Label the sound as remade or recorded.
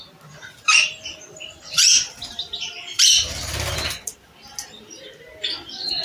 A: recorded